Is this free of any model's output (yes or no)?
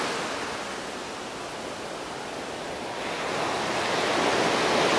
yes